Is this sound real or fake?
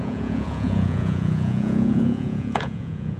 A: fake